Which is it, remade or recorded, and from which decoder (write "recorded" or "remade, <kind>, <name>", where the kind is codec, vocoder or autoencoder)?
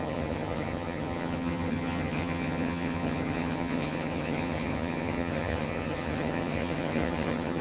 remade, vocoder, HiFi-GAN